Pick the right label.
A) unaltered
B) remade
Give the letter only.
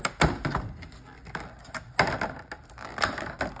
A